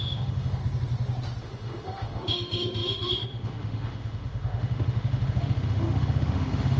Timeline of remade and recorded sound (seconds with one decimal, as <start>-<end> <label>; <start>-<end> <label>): 0.0-0.6 remade; 0.6-1.4 recorded; 1.4-6.8 remade